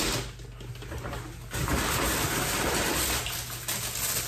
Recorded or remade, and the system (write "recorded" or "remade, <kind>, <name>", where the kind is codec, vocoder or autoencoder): recorded